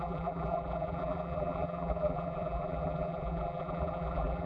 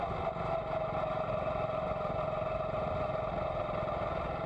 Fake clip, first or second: first